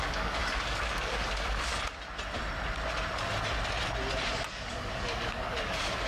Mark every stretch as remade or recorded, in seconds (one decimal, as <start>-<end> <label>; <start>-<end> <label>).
0.0-1.7 remade; 1.7-4.5 recorded; 4.5-6.1 remade